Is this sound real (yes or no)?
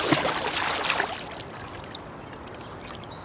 yes